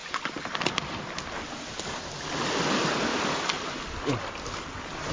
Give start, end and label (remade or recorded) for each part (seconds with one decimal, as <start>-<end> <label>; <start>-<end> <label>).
0.0-5.1 recorded